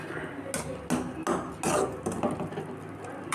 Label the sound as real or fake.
real